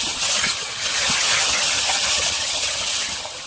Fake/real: fake